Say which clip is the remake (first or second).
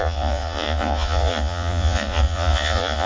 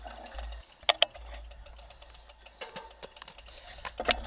first